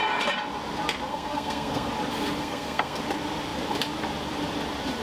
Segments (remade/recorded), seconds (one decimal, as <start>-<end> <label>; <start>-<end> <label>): 0.0-1.1 recorded; 1.1-1.9 remade; 1.9-2.4 recorded; 2.4-3.0 remade; 3.0-5.0 recorded